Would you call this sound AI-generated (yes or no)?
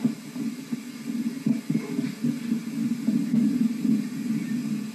no